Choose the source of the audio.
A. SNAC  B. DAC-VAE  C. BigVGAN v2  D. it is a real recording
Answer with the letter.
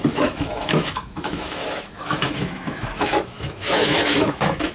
B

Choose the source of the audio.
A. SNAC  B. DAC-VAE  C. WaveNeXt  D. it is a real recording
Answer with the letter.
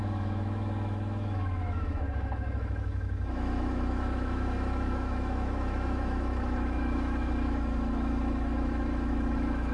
B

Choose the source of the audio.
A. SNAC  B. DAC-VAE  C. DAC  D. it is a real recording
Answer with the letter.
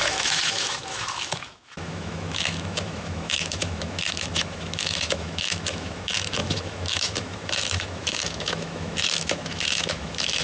B